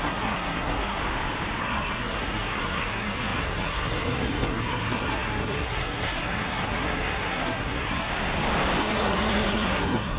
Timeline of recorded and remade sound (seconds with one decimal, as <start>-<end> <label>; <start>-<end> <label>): 0.0-1.0 remade; 1.0-1.6 recorded; 1.6-8.1 remade; 8.1-8.8 recorded; 8.8-10.2 remade